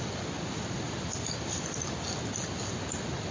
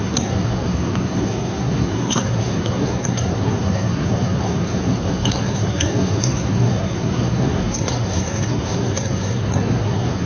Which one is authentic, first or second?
first